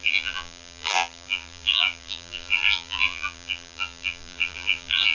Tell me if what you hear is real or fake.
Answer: fake